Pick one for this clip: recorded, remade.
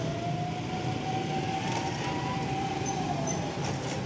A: recorded